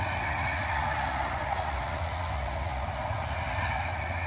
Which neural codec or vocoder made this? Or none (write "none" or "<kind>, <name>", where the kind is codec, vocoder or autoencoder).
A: vocoder, Vocos